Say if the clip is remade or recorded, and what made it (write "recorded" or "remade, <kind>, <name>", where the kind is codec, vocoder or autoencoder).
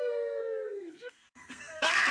remade, codec, SNAC